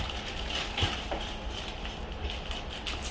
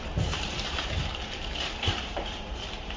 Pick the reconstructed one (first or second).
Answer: second